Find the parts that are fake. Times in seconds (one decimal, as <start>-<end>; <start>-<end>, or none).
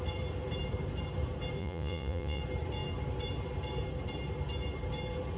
1.6-2.4